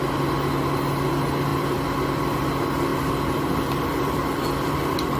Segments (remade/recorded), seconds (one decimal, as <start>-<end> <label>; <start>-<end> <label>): 0.0-1.5 recorded; 1.5-2.4 remade; 2.4-2.9 recorded; 2.9-5.2 remade